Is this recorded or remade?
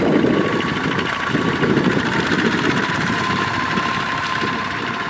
remade